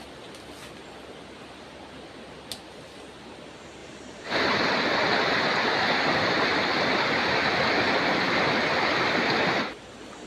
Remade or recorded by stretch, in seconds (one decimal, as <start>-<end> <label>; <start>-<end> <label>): 0.0-3.8 recorded; 3.8-4.7 remade; 4.7-10.3 recorded